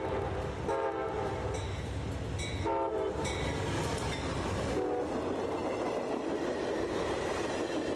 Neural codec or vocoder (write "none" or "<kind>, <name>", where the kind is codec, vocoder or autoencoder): none